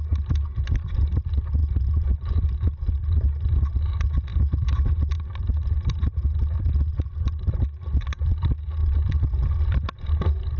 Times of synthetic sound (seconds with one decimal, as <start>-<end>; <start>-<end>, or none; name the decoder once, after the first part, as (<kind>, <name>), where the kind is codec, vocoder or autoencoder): 5.4-7.4 (vocoder, BigVGAN v2); 8.8-9.4